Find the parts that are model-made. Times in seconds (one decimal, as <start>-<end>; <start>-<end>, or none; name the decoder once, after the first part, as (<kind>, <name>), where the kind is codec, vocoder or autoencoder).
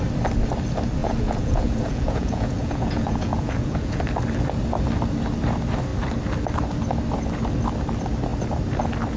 1.0-4.0 (vocoder, Vocos)